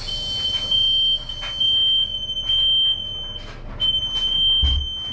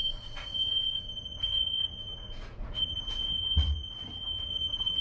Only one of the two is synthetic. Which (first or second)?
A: second